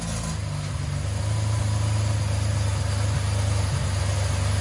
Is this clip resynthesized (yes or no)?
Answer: no